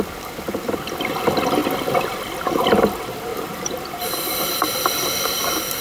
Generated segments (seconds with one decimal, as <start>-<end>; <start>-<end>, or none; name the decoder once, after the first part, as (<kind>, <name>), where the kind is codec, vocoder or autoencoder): 3.3-5.8 (vocoder, BigVGAN v2)